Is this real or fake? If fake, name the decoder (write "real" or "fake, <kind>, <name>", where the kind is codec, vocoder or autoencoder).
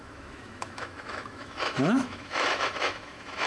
fake, autoencoder, DAC-VAE